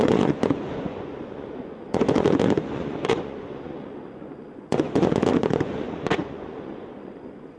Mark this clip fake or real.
fake